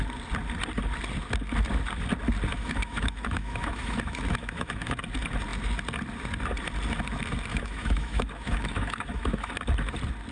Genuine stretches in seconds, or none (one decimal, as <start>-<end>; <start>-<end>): 0.0-2.5; 5.0-7.5; 9.5-10.3